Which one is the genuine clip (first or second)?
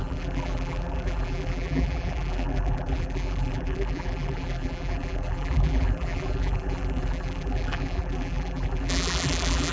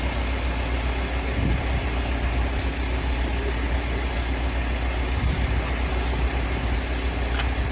second